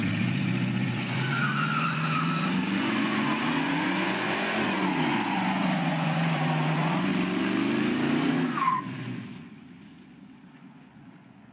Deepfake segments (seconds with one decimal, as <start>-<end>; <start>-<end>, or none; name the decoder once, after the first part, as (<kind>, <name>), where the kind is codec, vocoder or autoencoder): 0.0-7.1 (vocoder, Vocos); 8.3-11.5